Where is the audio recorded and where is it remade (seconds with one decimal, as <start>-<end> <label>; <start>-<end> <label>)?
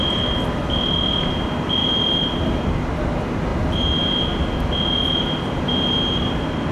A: 0.0-1.8 recorded; 1.8-2.6 remade; 2.6-6.7 recorded